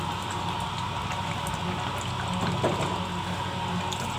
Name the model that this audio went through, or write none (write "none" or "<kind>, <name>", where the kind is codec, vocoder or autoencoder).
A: none